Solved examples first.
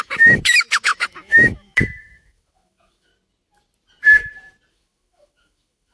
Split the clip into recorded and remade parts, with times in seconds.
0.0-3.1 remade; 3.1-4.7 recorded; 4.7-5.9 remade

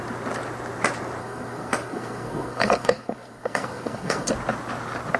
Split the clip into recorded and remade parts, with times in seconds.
0.0-1.2 recorded; 1.2-4.3 remade; 4.3-5.2 recorded

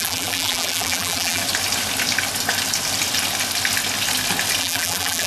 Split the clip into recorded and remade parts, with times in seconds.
0.0-1.4 remade; 1.4-4.6 recorded; 4.6-5.3 remade

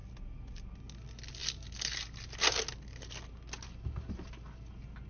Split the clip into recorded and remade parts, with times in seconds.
0.0-5.1 recorded

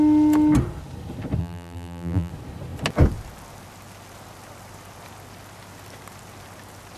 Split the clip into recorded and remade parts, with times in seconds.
0.0-1.4 recorded; 1.4-2.3 remade; 2.3-7.0 recorded

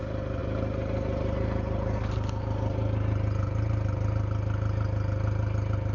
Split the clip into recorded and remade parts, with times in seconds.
0.0-5.9 recorded

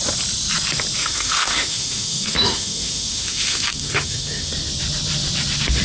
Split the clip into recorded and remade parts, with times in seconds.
0.0-1.0 recorded; 1.0-4.5 remade; 4.5-5.8 recorded